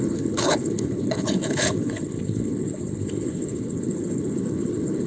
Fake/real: fake